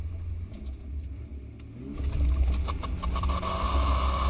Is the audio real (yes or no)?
yes